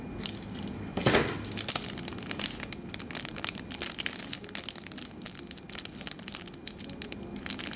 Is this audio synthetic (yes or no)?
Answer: no